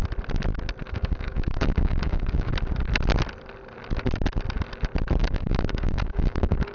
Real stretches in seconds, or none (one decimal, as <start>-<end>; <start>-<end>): 0.0-0.9; 2.5-5.2